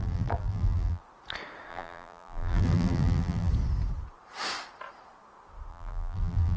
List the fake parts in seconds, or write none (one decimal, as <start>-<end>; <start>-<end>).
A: 0.0-1.0; 1.7-3.5; 5.7-6.6